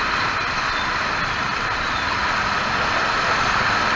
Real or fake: real